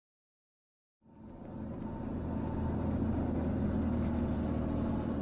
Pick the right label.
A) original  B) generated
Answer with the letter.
A